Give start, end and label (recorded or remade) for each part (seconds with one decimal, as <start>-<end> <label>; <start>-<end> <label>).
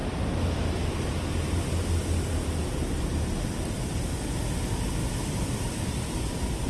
0.0-5.0 recorded; 5.0-6.7 remade